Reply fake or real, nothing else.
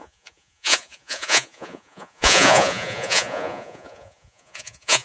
fake